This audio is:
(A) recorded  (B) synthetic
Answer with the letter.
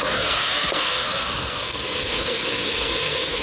B